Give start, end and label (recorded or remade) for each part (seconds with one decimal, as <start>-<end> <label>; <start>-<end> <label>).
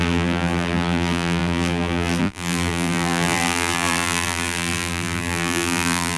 0.0-6.2 remade